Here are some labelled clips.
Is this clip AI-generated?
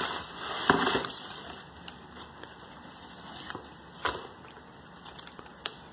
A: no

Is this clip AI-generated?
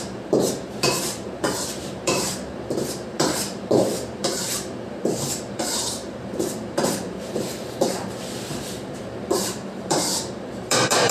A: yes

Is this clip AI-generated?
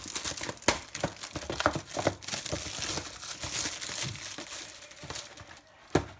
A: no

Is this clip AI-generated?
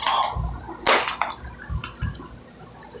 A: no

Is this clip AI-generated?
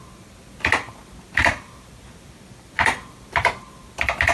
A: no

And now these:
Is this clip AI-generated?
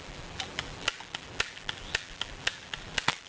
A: yes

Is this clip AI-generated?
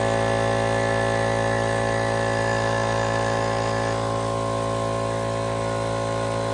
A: no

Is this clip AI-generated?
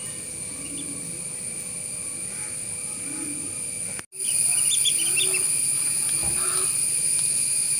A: no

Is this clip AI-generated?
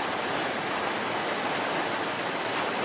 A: no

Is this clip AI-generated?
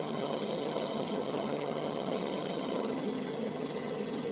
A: yes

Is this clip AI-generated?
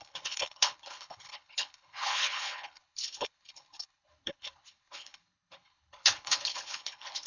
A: yes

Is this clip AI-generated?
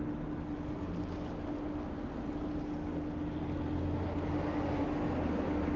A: no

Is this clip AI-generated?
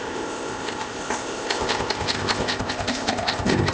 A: yes